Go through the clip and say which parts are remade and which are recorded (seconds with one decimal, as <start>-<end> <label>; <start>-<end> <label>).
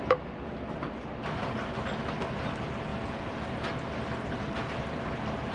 0.0-5.5 recorded